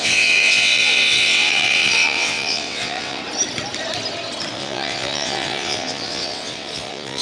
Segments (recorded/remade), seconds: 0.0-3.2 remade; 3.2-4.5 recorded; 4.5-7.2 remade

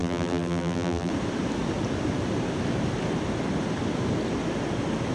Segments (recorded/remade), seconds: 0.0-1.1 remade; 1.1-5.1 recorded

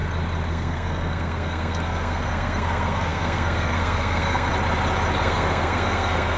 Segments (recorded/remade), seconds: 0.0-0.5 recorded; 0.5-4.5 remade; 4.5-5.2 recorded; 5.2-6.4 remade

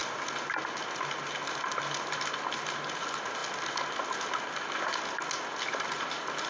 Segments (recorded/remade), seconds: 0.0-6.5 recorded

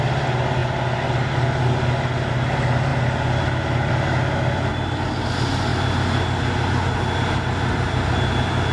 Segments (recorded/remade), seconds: 0.0-8.7 recorded